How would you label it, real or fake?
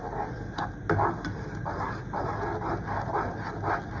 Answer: real